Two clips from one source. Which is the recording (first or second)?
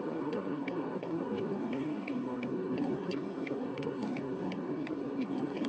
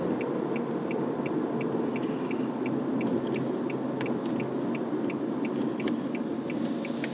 second